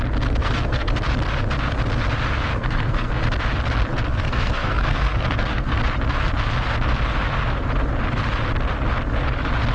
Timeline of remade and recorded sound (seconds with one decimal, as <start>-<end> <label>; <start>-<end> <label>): 0.0-0.4 recorded; 0.4-0.9 remade; 0.9-2.5 recorded; 2.5-3.1 remade; 3.1-4.1 recorded; 4.1-5.8 remade; 5.8-9.7 recorded